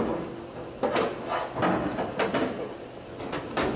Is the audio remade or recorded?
recorded